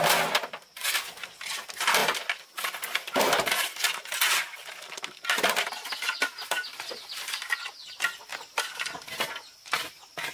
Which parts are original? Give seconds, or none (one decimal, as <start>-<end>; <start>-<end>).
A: 0.0-10.3

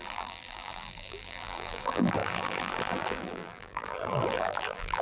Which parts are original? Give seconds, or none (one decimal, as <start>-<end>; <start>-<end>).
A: none

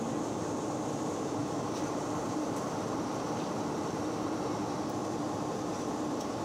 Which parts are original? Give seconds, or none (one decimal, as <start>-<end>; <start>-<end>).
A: 0.0-1.4; 3.9-6.4

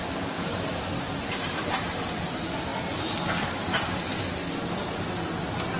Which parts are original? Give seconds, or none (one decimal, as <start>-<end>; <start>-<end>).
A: 0.6-5.8

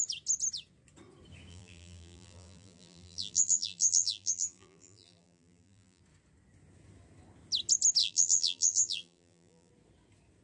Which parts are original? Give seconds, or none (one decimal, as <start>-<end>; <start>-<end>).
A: 0.0-1.5; 6.0-8.0; 9.7-10.4